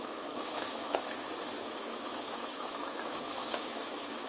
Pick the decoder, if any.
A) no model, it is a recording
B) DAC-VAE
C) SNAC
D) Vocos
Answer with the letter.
B